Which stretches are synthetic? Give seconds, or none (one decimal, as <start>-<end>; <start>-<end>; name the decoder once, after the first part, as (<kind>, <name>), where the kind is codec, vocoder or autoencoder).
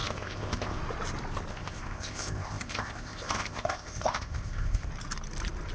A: 0.0-0.8 (codec, ZipCodec); 1.5-4.9